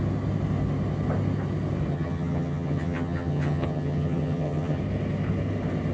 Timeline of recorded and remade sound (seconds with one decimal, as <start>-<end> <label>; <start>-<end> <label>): 0.0-1.9 recorded; 1.9-4.8 remade; 4.8-5.9 recorded

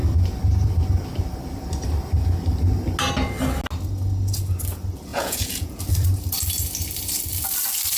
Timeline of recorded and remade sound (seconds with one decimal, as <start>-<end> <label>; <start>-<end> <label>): 0.0-5.1 recorded; 5.1-5.8 remade; 5.8-8.0 recorded

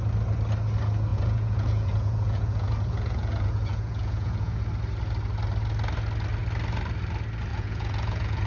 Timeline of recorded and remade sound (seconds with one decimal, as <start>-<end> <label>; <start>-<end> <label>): 0.0-1.1 recorded; 1.1-4.6 remade; 4.6-7.5 recorded; 7.5-8.5 remade

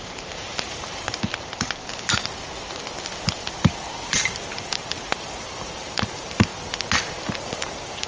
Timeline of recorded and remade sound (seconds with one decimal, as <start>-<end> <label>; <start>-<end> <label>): 0.0-1.9 remade; 1.9-3.6 recorded; 3.6-6.5 remade; 6.5-7.4 recorded; 7.4-8.1 remade

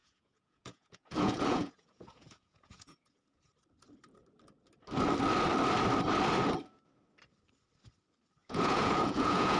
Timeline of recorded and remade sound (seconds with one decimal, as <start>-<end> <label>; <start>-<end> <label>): 0.0-3.4 remade; 3.4-8.4 recorded; 8.4-9.6 remade

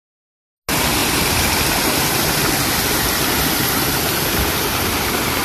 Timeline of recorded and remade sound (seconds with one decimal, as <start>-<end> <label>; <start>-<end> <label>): 0.0-5.4 recorded